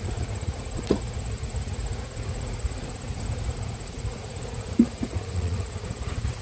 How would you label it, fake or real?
fake